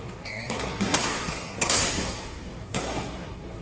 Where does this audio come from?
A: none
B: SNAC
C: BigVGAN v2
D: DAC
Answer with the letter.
B